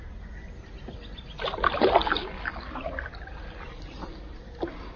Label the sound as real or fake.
real